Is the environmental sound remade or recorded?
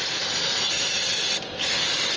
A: recorded